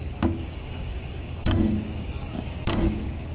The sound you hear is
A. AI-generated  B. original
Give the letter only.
A